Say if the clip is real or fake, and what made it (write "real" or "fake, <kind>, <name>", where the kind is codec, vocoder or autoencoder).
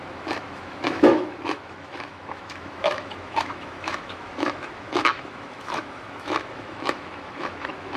fake, autoencoder, DAC-VAE